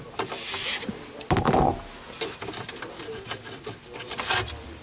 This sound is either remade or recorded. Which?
recorded